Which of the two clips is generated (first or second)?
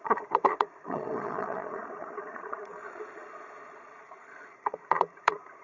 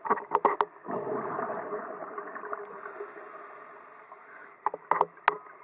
first